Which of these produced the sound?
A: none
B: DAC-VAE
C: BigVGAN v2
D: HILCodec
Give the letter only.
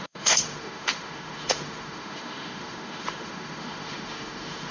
B